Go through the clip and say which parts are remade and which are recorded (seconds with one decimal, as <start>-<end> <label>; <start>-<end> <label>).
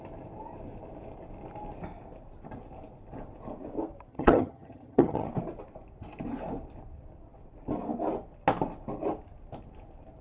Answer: 0.0-4.1 recorded; 4.1-5.3 remade; 5.3-10.2 recorded